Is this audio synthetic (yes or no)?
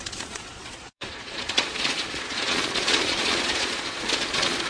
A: yes